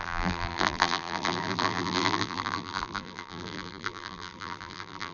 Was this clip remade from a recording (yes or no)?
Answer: yes